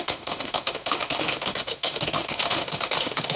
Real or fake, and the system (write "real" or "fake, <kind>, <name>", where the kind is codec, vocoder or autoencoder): fake, autoencoder, DAC-VAE